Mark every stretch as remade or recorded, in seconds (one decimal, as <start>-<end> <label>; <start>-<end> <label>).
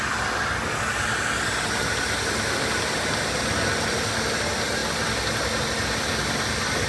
0.0-6.9 recorded